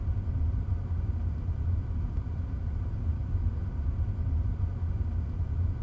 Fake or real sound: real